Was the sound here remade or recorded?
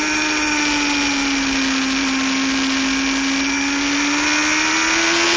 recorded